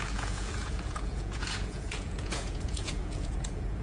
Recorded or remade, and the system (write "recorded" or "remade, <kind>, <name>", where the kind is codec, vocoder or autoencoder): remade, vocoder, Vocos